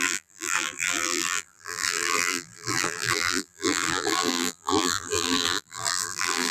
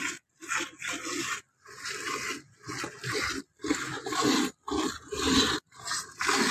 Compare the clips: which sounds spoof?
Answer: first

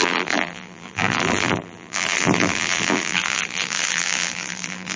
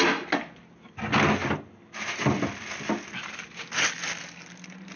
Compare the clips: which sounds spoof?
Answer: first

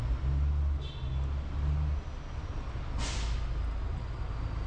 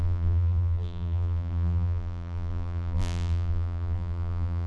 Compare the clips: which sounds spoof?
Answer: second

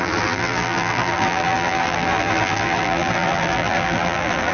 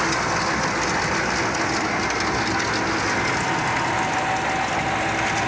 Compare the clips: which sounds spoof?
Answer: first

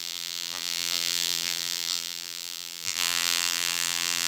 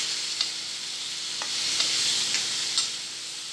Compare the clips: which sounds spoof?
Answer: first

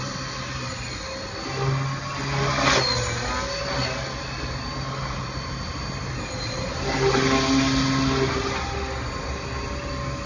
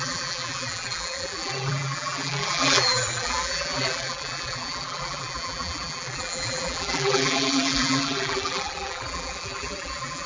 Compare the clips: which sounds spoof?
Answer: second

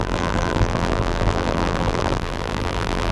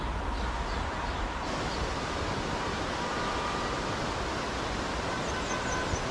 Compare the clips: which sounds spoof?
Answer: first